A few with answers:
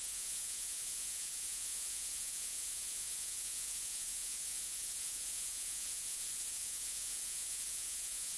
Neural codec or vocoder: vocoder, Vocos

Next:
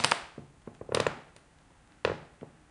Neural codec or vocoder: none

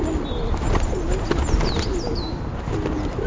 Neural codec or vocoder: none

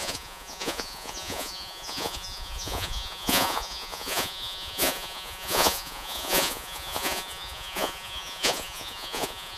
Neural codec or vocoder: vocoder, Vocos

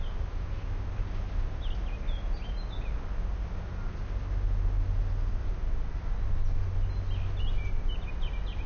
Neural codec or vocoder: none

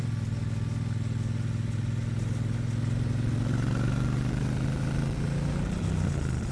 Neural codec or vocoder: none